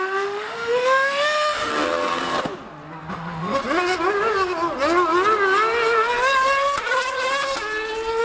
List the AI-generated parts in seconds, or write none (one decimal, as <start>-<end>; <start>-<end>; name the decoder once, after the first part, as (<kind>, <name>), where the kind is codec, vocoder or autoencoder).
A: 0.0-1.7 (autoencoder, DAC-VAE); 3.1-3.6